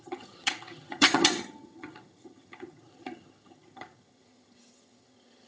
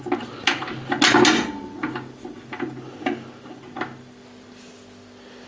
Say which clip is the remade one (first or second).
first